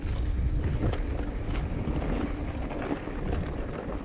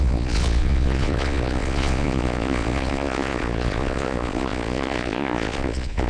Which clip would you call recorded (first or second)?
first